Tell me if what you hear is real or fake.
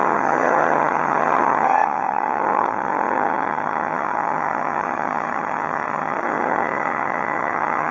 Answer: fake